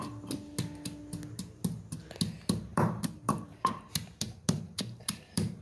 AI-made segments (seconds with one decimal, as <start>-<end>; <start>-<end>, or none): 2.7-5.6